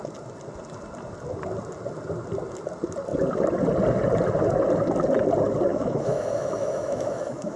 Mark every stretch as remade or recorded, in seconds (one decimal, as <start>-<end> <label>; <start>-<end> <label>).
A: 0.0-5.7 recorded; 5.7-7.6 remade